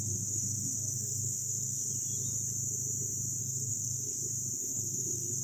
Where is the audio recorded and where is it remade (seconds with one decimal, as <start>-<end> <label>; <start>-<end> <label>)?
0.0-1.9 remade; 1.9-3.4 recorded; 3.4-4.1 remade; 4.1-4.6 recorded; 4.6-5.4 remade